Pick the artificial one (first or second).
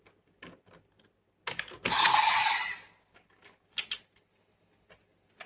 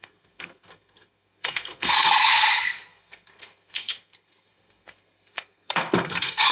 second